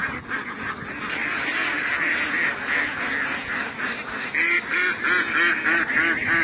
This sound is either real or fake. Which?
real